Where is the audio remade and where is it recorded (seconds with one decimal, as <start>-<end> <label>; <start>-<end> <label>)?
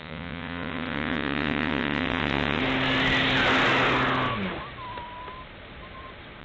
0.0-2.6 remade; 2.6-6.4 recorded